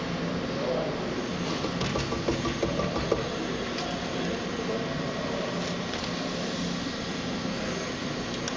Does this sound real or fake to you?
real